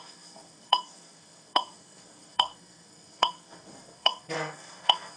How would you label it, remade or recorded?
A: remade